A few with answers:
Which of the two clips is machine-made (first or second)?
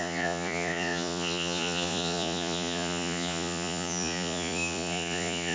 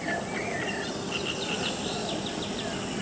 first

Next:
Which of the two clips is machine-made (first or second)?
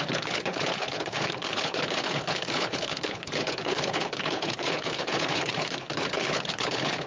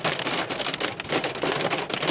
first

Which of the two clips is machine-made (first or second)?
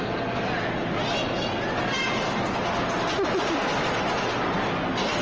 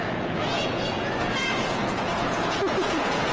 second